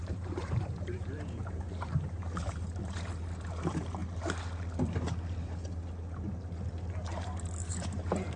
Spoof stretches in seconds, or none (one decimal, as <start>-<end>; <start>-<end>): 0.0-4.0; 7.7-8.4